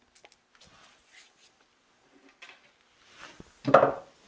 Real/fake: real